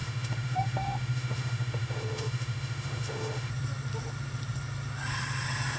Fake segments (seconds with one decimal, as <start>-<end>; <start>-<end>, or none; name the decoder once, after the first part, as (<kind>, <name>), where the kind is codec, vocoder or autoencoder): 0.0-3.5 (autoencoder, DAC-VAE)